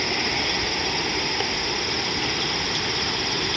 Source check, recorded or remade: recorded